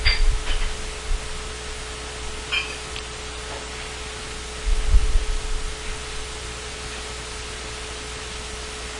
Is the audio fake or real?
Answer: real